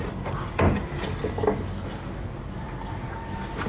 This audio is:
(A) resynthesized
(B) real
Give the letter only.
B